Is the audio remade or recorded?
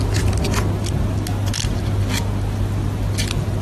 recorded